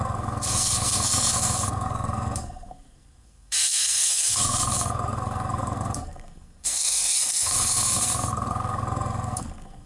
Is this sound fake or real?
fake